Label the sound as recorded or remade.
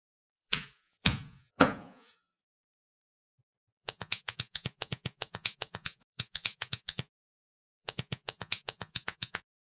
remade